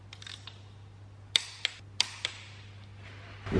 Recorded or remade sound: recorded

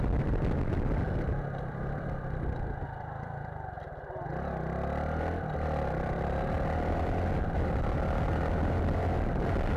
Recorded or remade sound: recorded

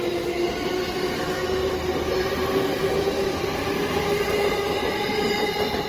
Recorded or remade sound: recorded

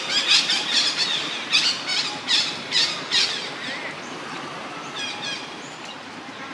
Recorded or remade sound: recorded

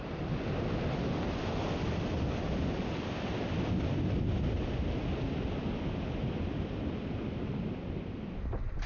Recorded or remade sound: recorded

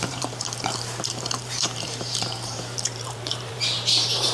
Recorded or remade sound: remade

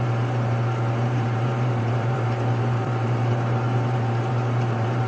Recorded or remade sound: remade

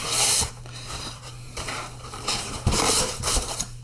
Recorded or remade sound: remade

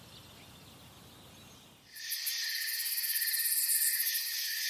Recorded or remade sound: recorded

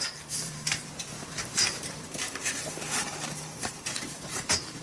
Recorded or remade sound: remade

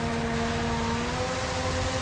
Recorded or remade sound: recorded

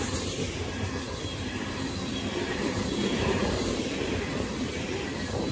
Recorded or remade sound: remade